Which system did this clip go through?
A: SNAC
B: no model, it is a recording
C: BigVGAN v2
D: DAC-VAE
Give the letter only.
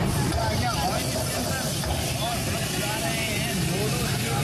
B